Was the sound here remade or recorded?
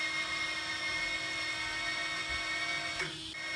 recorded